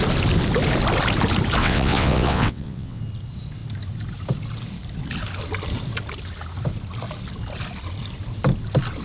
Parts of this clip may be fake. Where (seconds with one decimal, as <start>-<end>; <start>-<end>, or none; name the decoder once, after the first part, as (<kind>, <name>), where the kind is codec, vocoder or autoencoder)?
1.6-3.0 (vocoder, WaveNeXt)